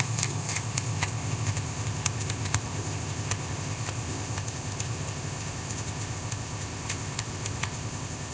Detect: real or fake fake